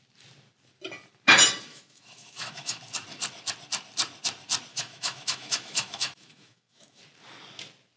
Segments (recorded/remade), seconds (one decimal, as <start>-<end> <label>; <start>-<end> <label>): 0.0-1.7 recorded; 1.7-2.8 remade; 2.8-4.7 recorded; 4.7-7.0 remade; 7.0-8.0 recorded